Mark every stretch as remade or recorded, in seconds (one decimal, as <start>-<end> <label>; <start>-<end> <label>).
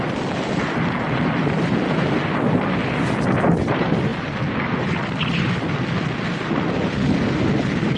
0.0-8.0 recorded